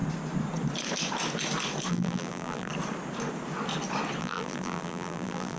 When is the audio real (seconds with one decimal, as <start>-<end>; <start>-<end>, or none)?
0.0-1.9; 2.7-4.2